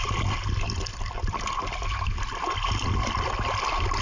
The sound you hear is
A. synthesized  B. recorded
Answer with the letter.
B